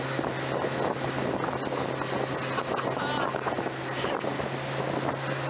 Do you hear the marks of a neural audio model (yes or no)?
no